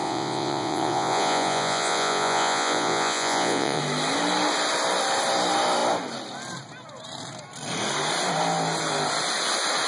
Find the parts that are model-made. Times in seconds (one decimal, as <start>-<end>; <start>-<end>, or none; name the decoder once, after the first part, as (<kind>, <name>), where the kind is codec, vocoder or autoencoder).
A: 0.0-3.8 (vocoder, Vocos)